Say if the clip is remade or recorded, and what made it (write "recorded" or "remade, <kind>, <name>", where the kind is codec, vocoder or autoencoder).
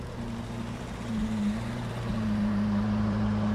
remade, vocoder, BigVGAN v2